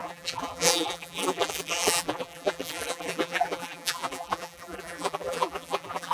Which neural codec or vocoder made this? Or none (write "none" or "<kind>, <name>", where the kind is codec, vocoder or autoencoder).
vocoder, BigVGAN v2